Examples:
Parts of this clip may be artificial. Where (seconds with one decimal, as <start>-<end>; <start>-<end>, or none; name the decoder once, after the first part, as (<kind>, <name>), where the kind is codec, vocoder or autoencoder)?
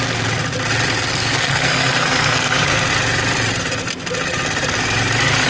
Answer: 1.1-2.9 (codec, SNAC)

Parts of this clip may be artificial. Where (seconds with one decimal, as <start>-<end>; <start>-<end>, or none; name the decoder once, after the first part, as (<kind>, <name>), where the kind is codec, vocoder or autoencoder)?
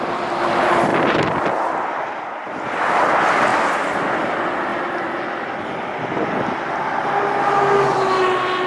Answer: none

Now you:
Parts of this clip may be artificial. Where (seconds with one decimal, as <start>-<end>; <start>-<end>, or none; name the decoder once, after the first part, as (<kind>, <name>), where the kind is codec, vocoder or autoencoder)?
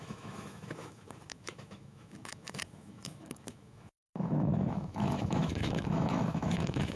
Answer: 0.0-7.0 (autoencoder, DAC-VAE)